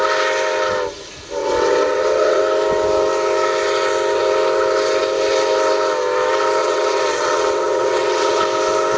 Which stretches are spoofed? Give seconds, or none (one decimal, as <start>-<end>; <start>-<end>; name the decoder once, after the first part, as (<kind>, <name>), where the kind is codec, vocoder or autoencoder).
1.4-2.4 (vocoder, WaveNeXt); 6.6-8.4